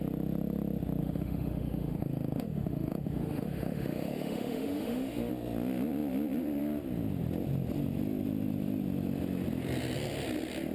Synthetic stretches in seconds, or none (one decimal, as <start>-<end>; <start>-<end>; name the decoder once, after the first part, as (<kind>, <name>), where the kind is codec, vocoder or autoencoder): 1.0-5.3 (autoencoder, DAC-VAE)